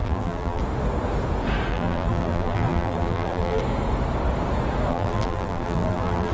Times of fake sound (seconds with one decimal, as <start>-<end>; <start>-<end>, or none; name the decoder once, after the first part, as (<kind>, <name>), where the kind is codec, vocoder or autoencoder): 0.0-0.6 (vocoder, BigVGAN v2); 1.7-3.6; 4.9-6.3